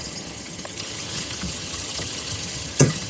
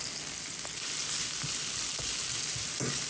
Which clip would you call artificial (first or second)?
first